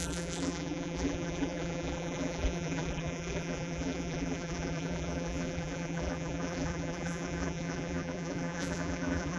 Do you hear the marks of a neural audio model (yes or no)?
yes